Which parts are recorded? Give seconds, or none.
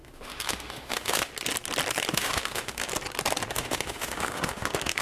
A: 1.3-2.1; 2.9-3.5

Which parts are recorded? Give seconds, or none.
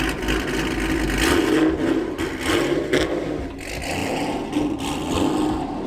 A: 0.0-5.9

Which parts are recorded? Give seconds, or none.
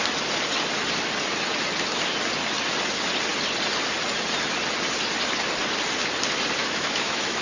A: 0.0-6.6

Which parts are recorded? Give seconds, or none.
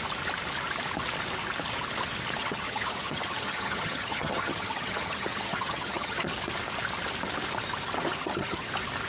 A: 0.0-2.4; 6.3-8.1; 8.7-9.1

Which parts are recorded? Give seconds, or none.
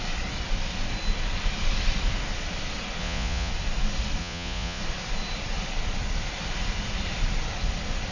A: 0.0-3.0; 3.5-4.2; 4.8-8.1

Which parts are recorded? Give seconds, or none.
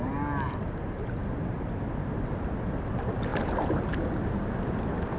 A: 0.0-5.2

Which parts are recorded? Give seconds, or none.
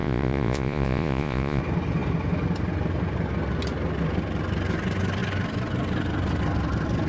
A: 1.6-7.1